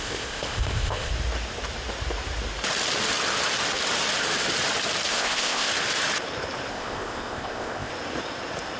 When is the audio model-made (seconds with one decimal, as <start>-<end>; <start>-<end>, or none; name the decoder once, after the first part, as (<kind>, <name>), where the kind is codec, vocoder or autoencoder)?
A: 0.0-1.1 (codec, ZipCodec); 5.1-5.7; 6.7-7.9